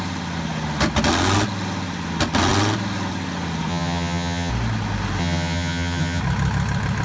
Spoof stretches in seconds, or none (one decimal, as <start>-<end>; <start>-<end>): 3.7-4.5; 5.2-6.2